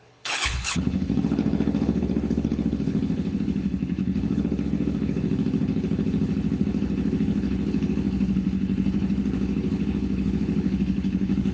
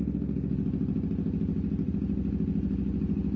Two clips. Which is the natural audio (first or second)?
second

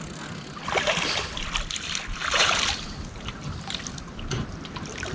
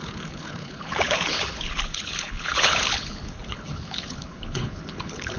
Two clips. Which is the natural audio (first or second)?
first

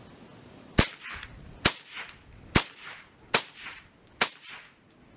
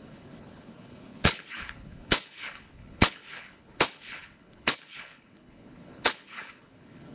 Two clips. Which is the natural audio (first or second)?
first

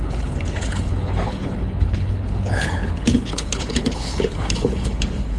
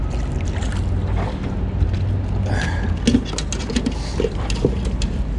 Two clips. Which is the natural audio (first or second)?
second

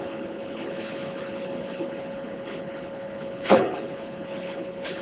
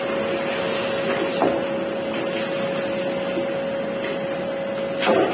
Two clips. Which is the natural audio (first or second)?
second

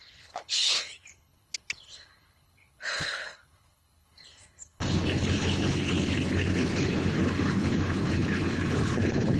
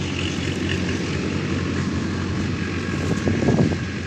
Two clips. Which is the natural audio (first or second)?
second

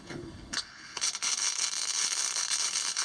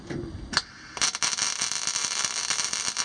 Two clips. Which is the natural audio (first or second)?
second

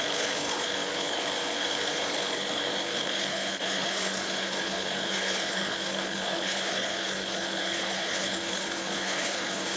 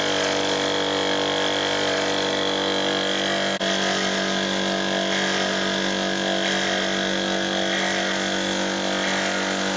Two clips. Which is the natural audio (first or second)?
second